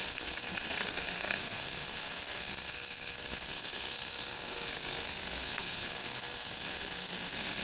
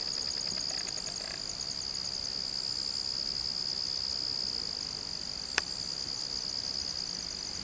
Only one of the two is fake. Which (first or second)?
first